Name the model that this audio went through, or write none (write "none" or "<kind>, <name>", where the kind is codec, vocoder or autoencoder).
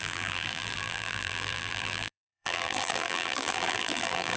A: vocoder, BigVGAN v2